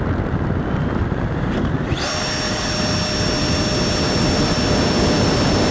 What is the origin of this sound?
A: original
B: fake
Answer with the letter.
A